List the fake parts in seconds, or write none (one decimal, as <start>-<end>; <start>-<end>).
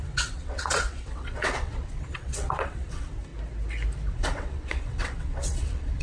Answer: 0.0-3.3; 4.1-6.0